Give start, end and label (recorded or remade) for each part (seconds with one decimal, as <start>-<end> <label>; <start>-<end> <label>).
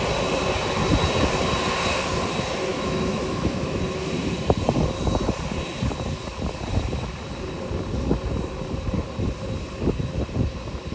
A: 0.0-2.7 recorded; 2.7-3.8 remade; 3.8-10.9 recorded